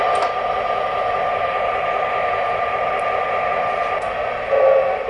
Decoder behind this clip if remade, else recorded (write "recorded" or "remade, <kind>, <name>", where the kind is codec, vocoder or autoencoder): recorded